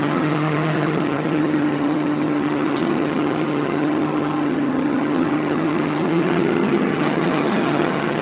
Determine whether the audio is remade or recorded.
remade